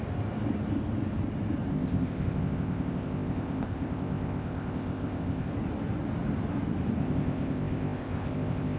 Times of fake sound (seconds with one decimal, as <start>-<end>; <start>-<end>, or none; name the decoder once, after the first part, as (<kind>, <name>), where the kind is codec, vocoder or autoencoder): 1.7-5.5 (codec, ZipCodec); 7.0-8.8